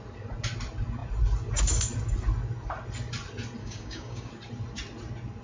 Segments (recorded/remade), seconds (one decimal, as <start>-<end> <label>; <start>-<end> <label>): 0.0-3.6 recorded; 3.6-4.3 remade; 4.3-5.4 recorded